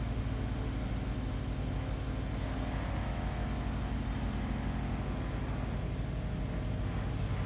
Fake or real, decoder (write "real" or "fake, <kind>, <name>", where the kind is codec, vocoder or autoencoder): real